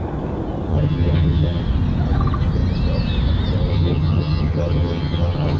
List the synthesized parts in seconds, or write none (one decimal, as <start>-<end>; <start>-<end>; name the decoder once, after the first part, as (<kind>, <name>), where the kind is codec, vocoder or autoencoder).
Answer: 0.7-1.6 (vocoder, HiFi-GAN); 3.7-5.6